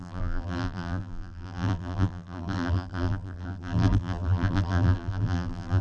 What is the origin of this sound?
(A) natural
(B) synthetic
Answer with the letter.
B